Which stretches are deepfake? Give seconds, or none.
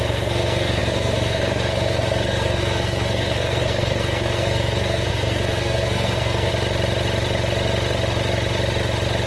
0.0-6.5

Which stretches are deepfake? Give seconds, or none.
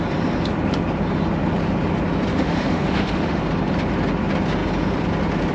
2.3-3.4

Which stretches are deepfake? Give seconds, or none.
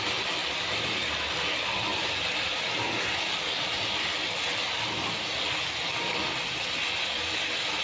0.4-1.1; 1.9-2.4